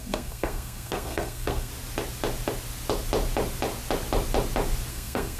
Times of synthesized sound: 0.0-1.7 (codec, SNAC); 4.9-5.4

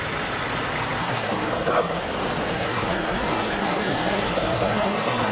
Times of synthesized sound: 1.0-2.0 (codec, SNAC); 2.5-5.3